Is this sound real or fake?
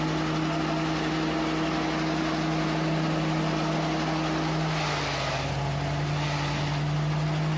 real